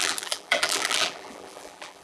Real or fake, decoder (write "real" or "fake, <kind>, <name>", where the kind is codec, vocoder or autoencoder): fake, vocoder, BigVGAN v2